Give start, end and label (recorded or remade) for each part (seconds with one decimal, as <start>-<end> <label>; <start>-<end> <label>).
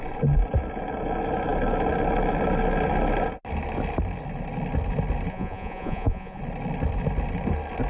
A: 0.0-5.3 recorded; 5.3-6.4 remade; 6.4-7.9 recorded